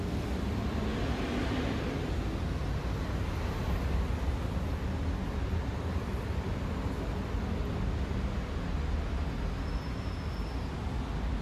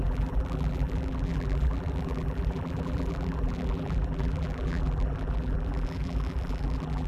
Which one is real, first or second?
first